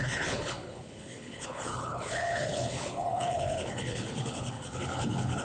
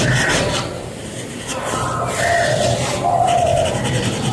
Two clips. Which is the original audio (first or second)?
second